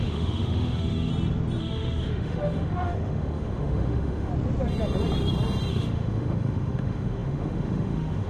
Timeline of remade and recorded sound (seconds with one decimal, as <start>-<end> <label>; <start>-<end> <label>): 0.0-1.1 remade; 1.1-1.6 recorded; 1.6-4.3 remade; 4.3-5.7 recorded; 5.7-8.3 remade